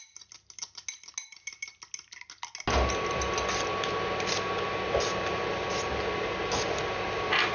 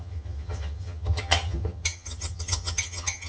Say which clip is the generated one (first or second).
second